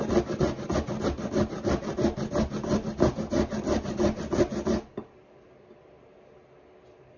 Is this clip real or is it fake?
real